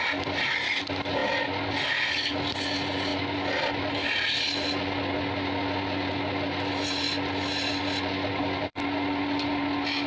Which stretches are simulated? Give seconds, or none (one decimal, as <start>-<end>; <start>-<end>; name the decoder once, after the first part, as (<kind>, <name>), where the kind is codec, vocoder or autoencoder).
1.2-1.9 (vocoder, BigVGAN v2)